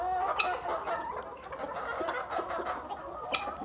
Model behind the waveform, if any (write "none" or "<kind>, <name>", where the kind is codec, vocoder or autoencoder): none